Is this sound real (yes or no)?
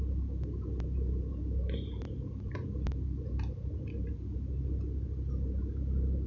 yes